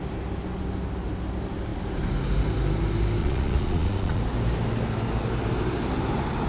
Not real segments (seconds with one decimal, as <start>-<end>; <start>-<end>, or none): 3.2-4.2